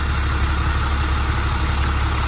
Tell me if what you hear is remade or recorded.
recorded